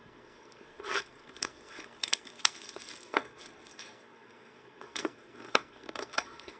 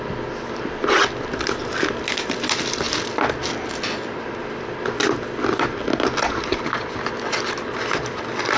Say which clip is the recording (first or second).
second